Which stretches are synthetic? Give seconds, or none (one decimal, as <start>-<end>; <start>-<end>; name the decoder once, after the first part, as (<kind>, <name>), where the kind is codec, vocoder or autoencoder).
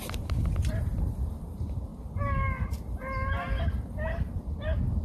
0.0-1.9 (vocoder, BigVGAN v2); 4.3-5.0